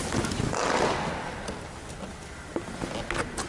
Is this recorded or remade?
recorded